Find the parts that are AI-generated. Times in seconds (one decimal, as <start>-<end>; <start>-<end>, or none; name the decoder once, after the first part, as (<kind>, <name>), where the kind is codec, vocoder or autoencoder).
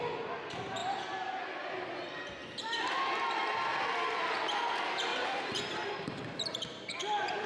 0.8-1.7 (vocoder, BigVGAN v2); 2.4-3.0; 5.1-7.0